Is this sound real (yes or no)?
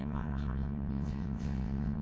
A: no